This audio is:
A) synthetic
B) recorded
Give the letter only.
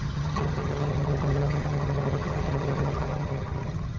A